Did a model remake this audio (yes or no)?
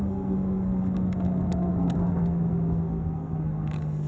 yes